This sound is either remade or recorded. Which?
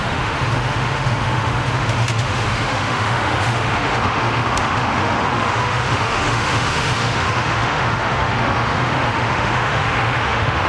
remade